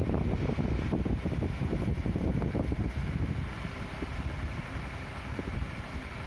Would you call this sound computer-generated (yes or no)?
no